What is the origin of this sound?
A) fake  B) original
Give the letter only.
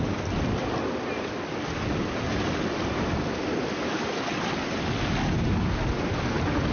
B